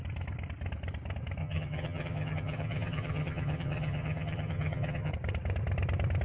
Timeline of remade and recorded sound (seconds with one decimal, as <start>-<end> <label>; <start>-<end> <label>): 0.0-1.4 recorded; 1.4-5.1 remade; 5.1-6.2 recorded